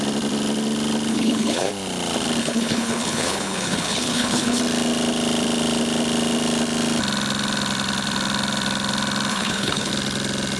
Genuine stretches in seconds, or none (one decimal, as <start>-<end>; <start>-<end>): 0.0-1.1; 1.7-2.4; 4.6-9.3; 9.9-10.6